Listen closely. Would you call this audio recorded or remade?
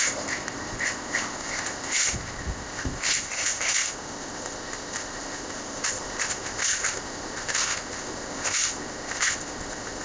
remade